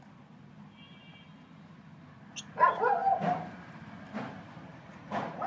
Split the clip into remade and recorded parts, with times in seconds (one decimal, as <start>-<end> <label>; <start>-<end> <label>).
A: 0.0-4.7 recorded; 4.7-5.5 remade